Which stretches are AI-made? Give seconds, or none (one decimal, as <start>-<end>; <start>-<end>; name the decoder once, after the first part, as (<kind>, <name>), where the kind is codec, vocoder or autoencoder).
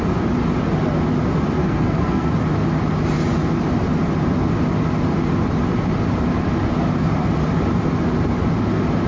1.6-2.3 (codec, SNAC)